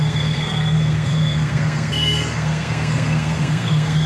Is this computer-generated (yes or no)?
yes